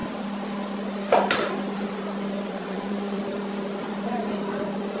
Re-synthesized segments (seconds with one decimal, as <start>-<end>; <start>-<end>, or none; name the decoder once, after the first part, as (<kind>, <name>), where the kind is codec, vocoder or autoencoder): 2.5-3.2 (vocoder, Vocos)